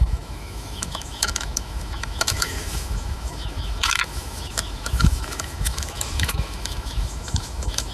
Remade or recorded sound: remade